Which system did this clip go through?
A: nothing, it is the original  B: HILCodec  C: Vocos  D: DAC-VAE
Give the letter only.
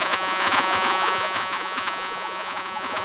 C